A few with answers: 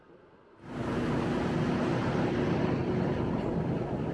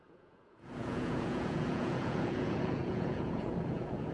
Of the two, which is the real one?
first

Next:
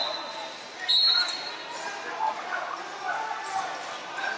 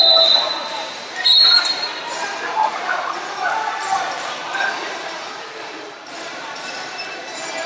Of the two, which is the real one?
first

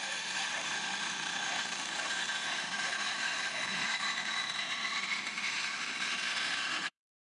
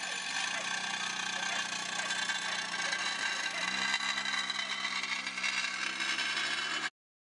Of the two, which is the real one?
second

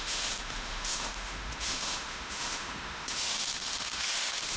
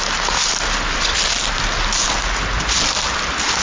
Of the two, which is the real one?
second